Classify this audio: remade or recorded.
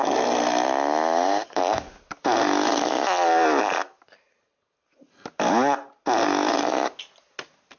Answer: recorded